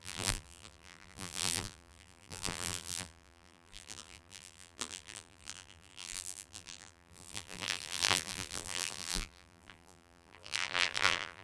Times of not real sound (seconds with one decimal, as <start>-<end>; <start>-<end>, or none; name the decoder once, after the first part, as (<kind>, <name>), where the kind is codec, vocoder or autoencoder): 0.0-11.4 (vocoder, BigVGAN v2)